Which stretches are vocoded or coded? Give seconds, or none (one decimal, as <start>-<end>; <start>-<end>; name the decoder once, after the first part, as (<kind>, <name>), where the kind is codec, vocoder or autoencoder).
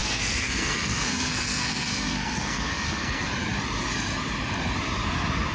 0.0-3.3 (codec, SNAC)